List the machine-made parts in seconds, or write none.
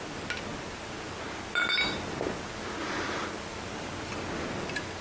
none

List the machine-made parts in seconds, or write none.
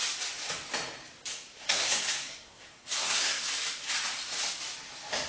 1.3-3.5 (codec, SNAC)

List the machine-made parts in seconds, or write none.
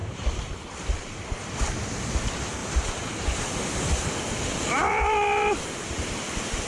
0.0-1.5 (vocoder, BigVGAN v2); 2.6-5.7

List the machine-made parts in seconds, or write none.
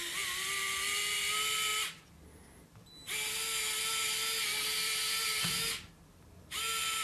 none